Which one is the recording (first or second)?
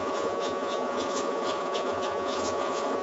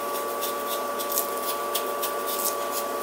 second